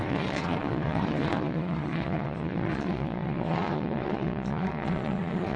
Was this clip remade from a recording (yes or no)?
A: yes